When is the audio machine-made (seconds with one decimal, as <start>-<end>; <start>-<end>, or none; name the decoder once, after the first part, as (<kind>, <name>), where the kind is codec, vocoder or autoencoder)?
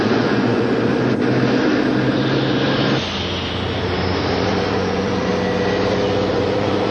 0.0-0.9 (vocoder, Vocos); 4.7-5.3; 6.3-6.9